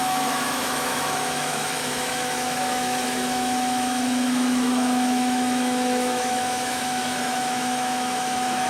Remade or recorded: remade